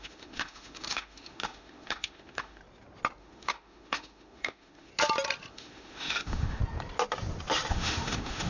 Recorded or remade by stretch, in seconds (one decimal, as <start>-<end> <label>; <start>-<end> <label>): 0.0-2.6 remade; 2.6-3.2 recorded; 3.2-4.9 remade; 4.9-5.5 recorded; 5.5-6.6 remade; 6.6-7.7 recorded; 7.7-8.5 remade